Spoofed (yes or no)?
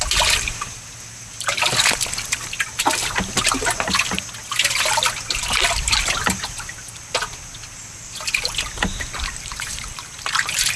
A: no